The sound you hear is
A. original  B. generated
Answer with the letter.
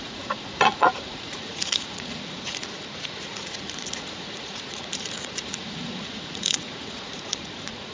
B